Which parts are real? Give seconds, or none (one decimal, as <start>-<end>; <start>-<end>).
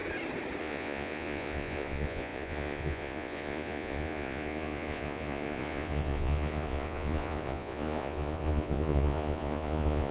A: 0.0-0.6